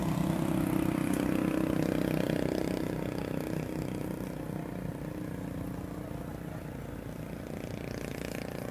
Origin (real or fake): real